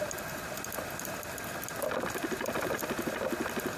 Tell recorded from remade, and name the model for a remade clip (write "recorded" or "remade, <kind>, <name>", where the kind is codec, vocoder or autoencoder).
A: recorded